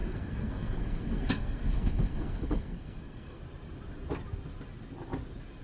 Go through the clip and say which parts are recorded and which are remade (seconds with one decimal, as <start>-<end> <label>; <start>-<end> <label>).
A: 0.0-3.4 remade; 3.4-5.6 recorded